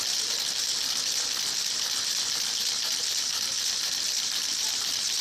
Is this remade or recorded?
recorded